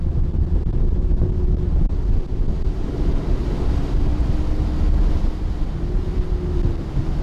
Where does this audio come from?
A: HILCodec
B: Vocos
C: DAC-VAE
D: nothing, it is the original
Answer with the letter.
D